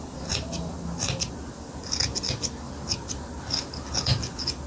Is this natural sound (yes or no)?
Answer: yes